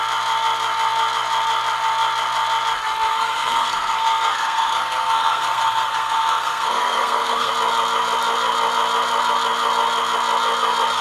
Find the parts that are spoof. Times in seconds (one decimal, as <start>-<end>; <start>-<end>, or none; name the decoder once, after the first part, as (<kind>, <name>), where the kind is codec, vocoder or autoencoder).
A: 3.1-7.5 (codec, SNAC)